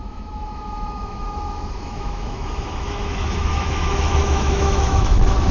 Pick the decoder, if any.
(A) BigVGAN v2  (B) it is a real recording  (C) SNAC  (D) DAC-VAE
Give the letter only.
D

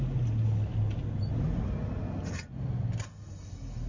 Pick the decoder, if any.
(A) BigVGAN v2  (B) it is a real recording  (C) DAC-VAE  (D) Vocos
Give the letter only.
B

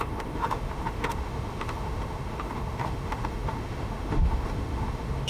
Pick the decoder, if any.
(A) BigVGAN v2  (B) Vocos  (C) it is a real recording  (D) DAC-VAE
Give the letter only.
D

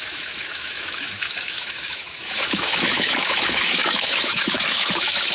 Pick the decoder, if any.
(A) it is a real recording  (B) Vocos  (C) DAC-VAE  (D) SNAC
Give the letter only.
C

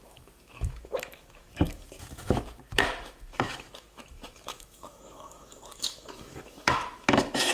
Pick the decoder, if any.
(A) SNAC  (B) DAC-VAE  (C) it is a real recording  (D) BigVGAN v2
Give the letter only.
B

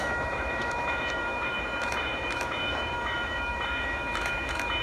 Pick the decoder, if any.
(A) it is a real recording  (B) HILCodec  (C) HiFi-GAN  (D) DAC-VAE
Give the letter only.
D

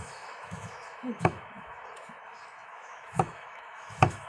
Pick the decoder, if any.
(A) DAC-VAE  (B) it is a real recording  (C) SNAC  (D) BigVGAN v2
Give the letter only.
A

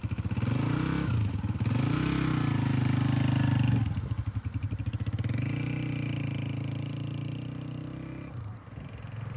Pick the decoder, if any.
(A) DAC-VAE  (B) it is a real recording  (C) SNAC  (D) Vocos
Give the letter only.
B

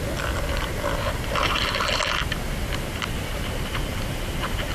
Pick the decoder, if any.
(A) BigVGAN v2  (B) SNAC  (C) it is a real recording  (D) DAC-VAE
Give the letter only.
C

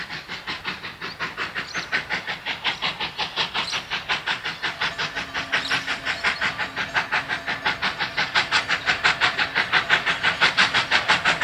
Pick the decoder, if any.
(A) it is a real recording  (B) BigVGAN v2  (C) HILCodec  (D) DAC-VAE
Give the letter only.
A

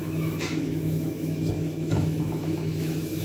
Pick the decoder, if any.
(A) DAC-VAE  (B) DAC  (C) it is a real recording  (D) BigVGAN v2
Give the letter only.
A